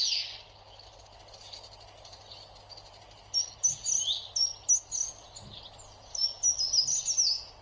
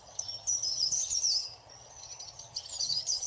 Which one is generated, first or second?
second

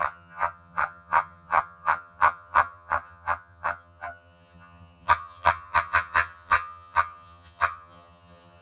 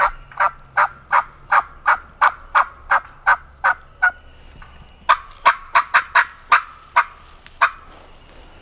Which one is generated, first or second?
first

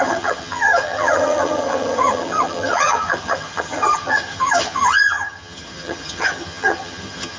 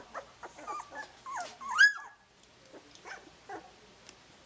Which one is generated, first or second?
first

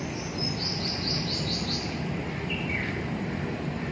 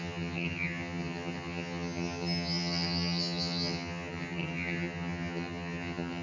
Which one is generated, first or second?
second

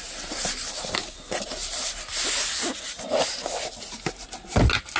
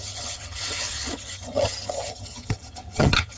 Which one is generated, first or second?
second